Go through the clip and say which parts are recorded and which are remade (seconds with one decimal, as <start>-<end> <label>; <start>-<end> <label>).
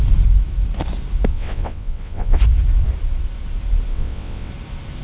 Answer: 0.0-1.3 recorded; 1.3-2.4 remade; 2.4-3.9 recorded; 3.9-4.5 remade; 4.5-5.0 recorded